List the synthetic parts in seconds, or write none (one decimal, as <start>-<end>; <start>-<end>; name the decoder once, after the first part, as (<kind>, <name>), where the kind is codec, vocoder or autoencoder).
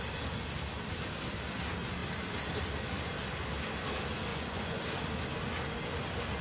4.3-4.8 (vocoder, Vocos)